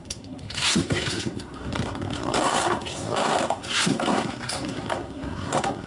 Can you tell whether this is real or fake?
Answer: fake